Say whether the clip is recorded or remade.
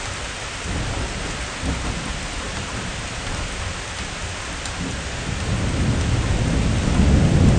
recorded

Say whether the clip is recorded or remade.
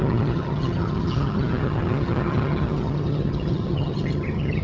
remade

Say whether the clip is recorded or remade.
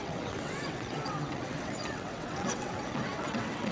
remade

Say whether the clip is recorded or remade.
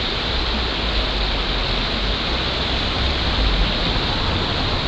recorded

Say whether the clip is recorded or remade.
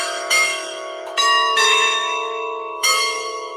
remade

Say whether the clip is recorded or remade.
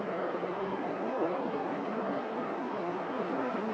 remade